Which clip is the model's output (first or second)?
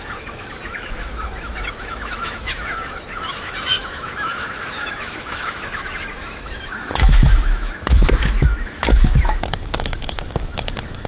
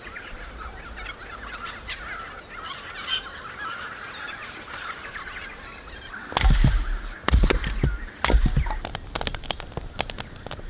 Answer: first